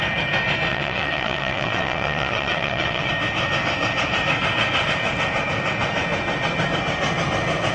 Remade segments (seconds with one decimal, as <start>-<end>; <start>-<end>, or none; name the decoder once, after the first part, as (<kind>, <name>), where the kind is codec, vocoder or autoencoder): 0.7-3.1 (vocoder, WaveNeXt)